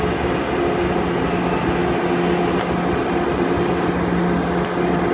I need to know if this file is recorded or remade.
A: recorded